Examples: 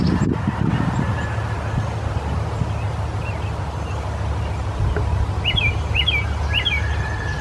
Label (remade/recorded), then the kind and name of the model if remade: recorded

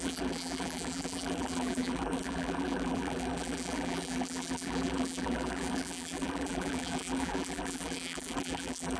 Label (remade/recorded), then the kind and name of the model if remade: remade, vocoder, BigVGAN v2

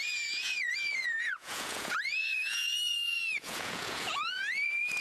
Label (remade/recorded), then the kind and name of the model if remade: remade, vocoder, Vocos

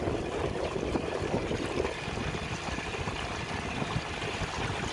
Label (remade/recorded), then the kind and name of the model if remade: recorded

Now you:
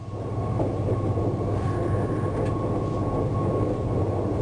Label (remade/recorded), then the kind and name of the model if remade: recorded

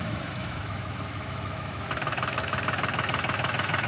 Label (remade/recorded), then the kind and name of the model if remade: remade, autoencoder, DAC-VAE